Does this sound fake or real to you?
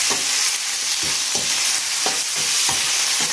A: real